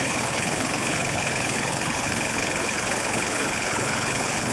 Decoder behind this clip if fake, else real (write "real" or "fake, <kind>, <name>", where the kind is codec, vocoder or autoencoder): fake, codec, HILCodec